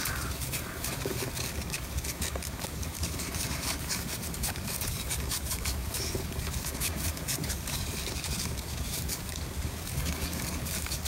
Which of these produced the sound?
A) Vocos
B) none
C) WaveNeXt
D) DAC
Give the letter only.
D